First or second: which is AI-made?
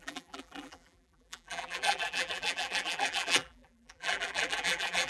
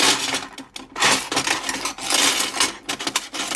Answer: first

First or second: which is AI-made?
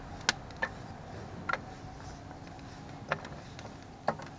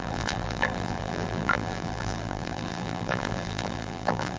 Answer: second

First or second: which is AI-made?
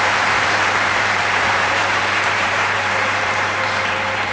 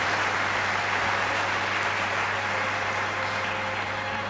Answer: first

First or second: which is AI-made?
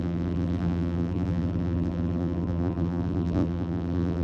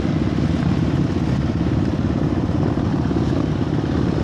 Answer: first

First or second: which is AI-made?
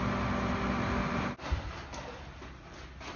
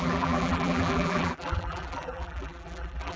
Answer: second